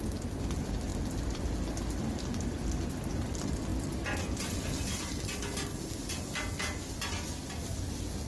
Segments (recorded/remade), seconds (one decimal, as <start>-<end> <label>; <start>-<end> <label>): 0.0-8.3 recorded